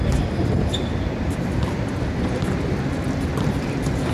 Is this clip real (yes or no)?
yes